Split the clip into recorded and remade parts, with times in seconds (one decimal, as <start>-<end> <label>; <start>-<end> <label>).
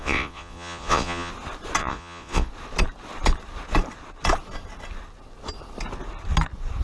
0.0-1.3 remade; 1.3-1.8 recorded; 1.8-2.5 remade; 2.5-6.8 recorded